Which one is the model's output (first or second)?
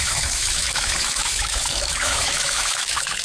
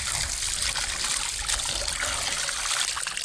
first